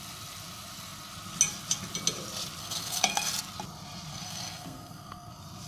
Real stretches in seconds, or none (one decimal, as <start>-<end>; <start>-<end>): 0.0-2.6; 3.3-4.1; 5.3-5.7